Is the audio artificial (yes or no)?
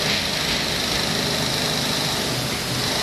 no